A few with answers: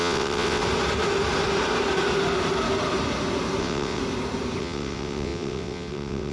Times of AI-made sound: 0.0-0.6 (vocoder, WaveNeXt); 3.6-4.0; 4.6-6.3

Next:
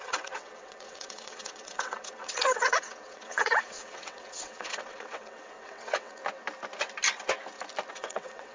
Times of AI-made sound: 0.0-6.2 (vocoder, WaveNeXt); 7.9-8.5

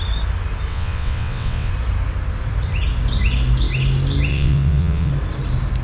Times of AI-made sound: 0.7-1.7 (vocoder, WaveNeXt); 4.3-5.1

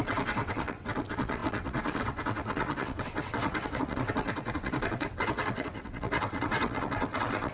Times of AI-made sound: 0.0-7.5 (vocoder, WaveNeXt)

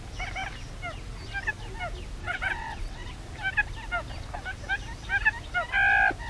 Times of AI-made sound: 2.2-3.1 (vocoder, WaveNeXt)

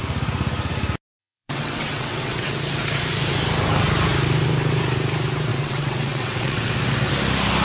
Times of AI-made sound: 1.2-2.6 (vocoder, WaveNeXt); 5.5-6.7